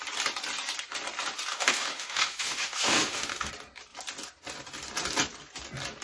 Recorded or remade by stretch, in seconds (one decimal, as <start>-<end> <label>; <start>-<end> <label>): 0.0-1.5 recorded; 1.5-3.5 remade; 3.5-6.0 recorded

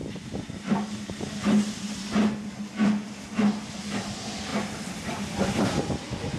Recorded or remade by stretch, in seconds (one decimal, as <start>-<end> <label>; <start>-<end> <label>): 0.0-6.4 recorded